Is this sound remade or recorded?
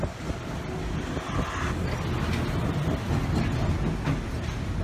recorded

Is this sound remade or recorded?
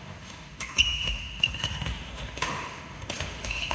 remade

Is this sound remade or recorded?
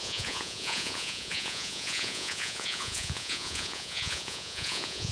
remade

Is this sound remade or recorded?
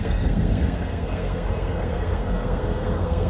remade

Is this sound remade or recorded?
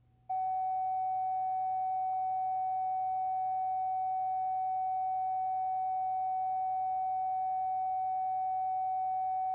recorded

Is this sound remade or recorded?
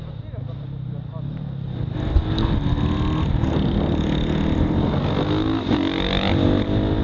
recorded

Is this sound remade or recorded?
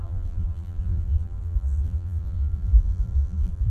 remade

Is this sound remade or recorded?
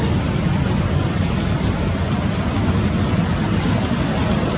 recorded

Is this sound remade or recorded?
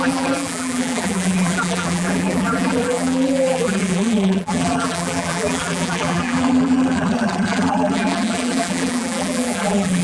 remade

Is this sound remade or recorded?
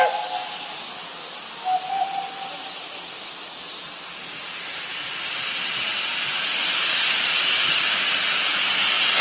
recorded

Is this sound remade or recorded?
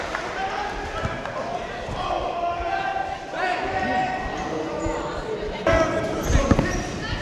recorded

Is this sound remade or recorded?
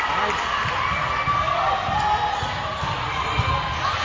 recorded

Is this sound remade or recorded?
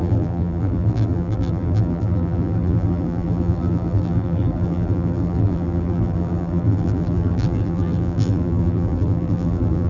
remade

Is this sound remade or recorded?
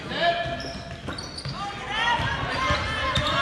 recorded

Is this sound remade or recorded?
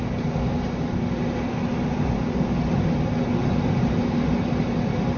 recorded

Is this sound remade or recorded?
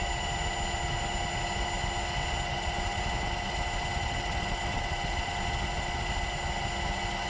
recorded